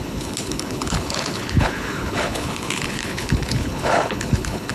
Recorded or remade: remade